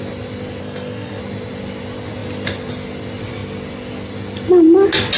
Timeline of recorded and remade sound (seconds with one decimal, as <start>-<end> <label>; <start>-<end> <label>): 0.0-0.6 recorded; 0.6-1.2 remade; 1.2-5.2 recorded